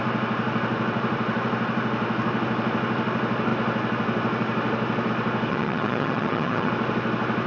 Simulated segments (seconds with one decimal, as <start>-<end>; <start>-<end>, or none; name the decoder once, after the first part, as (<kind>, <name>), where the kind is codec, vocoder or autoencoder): 5.5-6.7 (vocoder, HiFi-GAN)

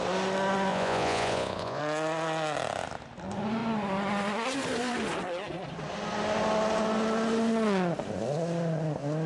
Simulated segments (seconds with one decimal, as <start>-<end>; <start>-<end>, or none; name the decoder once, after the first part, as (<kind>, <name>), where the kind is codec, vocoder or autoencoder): 0.7-1.8 (vocoder, Vocos)